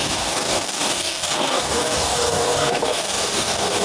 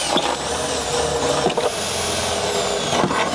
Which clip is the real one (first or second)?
second